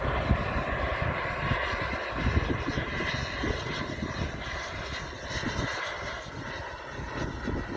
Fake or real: real